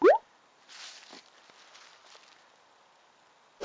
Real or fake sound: real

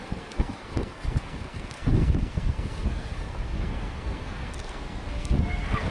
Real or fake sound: fake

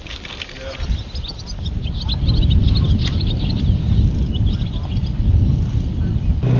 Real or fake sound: real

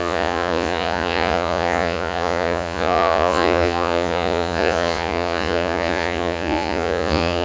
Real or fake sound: fake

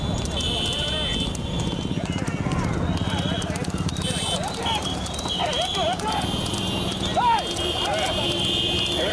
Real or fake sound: real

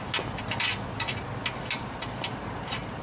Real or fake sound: real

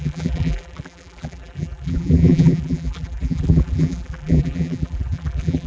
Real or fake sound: fake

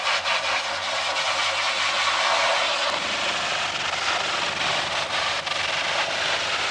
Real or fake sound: real